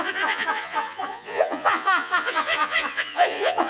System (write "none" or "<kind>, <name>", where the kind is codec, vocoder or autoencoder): vocoder, Vocos